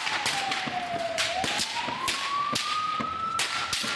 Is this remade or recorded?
recorded